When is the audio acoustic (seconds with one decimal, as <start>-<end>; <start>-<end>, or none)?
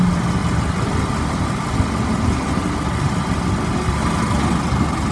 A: 0.0-5.1